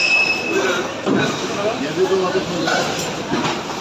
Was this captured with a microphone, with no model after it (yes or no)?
yes